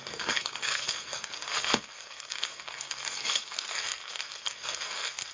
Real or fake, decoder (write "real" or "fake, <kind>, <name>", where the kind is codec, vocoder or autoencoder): fake, codec, SNAC